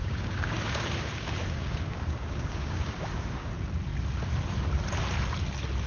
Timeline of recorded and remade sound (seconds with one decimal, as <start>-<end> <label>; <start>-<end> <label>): 0.0-3.5 remade; 3.5-5.9 recorded